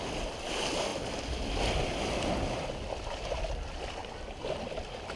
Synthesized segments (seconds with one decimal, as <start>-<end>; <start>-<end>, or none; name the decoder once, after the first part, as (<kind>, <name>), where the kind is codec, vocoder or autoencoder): none